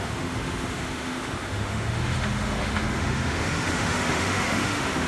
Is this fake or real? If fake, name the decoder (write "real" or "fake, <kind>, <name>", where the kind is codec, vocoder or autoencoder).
fake, autoencoder, DAC-VAE